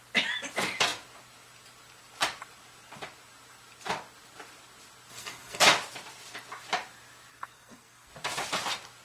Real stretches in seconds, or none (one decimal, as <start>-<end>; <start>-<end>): 0.0-5.1; 5.6-7.3; 8.1-9.0